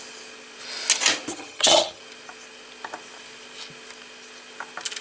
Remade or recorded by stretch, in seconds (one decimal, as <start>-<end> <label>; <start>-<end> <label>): 0.0-1.3 recorded; 1.3-2.0 remade; 2.0-5.0 recorded